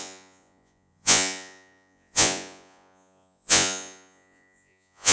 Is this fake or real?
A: fake